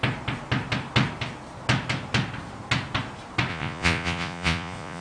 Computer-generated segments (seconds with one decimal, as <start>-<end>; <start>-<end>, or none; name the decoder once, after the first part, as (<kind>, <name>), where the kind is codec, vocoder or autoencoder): 3.5-5.0 (vocoder, Vocos)